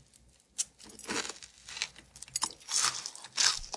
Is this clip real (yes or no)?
yes